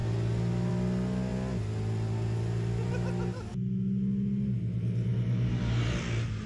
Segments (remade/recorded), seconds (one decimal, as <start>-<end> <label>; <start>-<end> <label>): 0.0-6.5 recorded